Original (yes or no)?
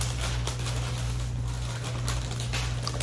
yes